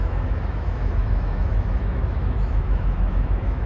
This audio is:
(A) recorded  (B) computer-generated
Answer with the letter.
B